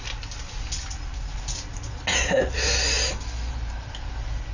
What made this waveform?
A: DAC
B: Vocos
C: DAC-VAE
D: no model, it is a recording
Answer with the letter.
D